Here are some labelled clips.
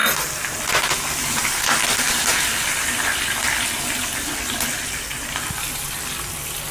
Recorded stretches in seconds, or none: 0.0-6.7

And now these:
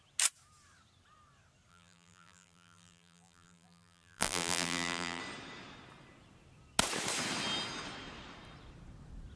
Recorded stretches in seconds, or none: 0.0-1.7; 5.2-9.4

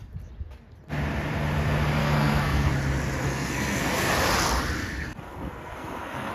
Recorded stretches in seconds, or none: 0.0-2.0; 2.7-3.2; 4.1-4.8

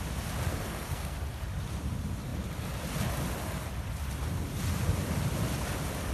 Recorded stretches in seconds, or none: 0.0-0.5; 1.2-6.1

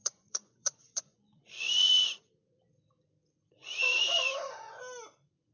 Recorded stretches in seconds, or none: 2.3-3.6; 4.8-5.5

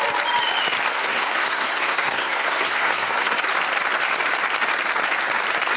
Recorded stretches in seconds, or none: 0.0-0.9; 3.4-5.8

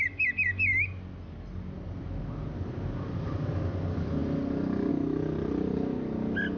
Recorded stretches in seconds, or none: 0.0-6.6